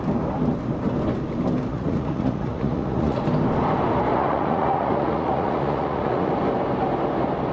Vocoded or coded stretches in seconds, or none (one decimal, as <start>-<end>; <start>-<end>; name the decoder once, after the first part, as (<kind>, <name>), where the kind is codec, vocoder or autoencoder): 1.7-3.2 (vocoder, Vocos); 4.1-6.3